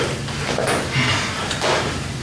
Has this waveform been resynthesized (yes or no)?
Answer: no